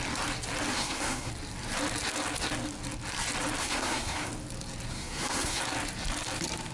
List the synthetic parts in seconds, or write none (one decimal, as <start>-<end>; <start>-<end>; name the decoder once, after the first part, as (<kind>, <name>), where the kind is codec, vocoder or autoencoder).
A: 0.7-1.3 (codec, SNAC); 3.6-4.3; 4.9-5.6